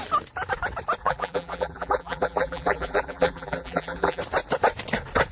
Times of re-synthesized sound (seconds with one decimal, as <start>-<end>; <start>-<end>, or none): 1.0-4.2